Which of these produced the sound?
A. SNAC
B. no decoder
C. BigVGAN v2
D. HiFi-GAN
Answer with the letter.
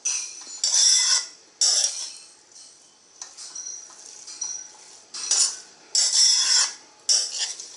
B